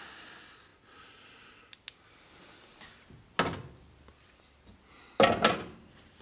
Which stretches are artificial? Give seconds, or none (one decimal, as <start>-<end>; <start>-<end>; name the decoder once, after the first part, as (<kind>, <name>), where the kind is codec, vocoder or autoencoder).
none